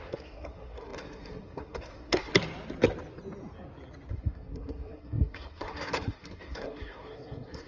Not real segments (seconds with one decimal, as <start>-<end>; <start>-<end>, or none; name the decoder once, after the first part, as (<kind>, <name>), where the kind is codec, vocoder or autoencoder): 0.0-2.3 (codec, SNAC); 4.1-7.7